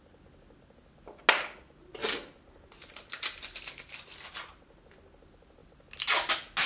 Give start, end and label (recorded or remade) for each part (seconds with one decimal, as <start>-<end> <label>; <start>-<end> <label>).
0.0-6.7 recorded